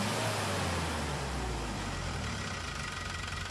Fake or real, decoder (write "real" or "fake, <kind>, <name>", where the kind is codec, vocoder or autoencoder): real